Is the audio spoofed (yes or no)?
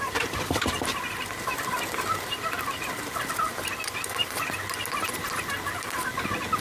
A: no